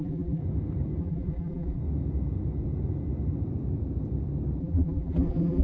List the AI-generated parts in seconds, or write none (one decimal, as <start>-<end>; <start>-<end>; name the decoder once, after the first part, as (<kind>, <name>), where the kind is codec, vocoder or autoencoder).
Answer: 0.0-0.4 (vocoder, BigVGAN v2); 1.0-1.8; 4.6-5.6